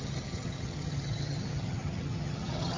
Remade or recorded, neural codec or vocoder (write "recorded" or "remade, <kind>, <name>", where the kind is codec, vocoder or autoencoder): remade, vocoder, HiFi-GAN